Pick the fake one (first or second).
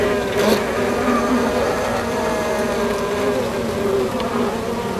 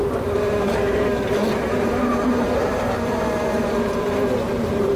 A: second